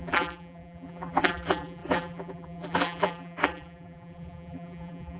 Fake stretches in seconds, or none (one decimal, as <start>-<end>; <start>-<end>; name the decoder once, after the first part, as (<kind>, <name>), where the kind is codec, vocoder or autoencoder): 0.0-5.2 (vocoder, BigVGAN v2)